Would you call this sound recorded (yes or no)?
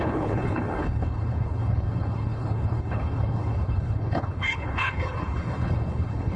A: no